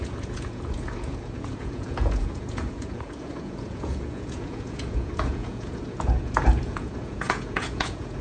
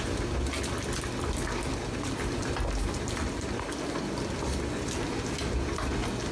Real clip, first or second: second